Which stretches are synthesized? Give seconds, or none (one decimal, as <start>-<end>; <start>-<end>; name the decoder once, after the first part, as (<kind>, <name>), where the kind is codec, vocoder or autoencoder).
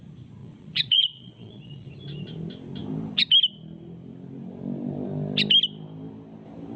0.4-1.9 (vocoder, Vocos)